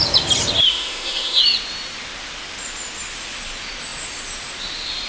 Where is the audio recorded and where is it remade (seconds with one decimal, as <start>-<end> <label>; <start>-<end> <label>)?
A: 0.0-0.7 recorded; 0.7-1.4 remade; 1.4-5.1 recorded